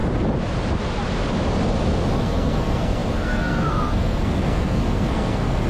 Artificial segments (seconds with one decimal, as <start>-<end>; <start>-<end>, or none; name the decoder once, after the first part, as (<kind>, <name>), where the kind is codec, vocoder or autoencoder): 2.2-5.7 (codec, SNAC)